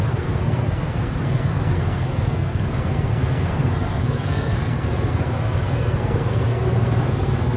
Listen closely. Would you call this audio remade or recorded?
remade